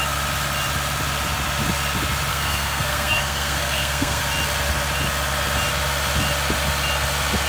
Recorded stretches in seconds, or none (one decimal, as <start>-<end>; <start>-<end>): 0.0-2.3; 4.2-7.5